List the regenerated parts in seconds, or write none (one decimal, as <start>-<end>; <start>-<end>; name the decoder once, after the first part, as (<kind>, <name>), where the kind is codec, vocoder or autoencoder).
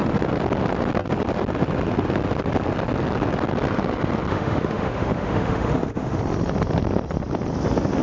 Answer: 4.3-6.2 (autoencoder, DAC-VAE)